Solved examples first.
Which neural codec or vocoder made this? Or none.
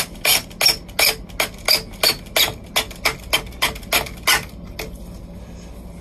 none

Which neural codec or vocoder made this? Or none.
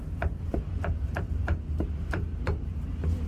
vocoder, BigVGAN v2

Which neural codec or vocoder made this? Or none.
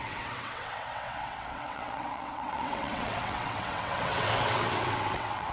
vocoder, WaveNeXt